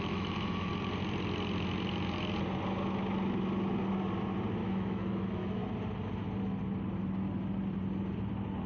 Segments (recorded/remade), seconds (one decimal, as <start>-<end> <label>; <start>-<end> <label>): 0.0-0.7 remade; 0.7-4.6 recorded; 4.6-5.6 remade; 5.6-8.7 recorded